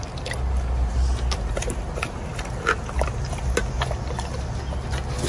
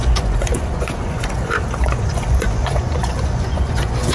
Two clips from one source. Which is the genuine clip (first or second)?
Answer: first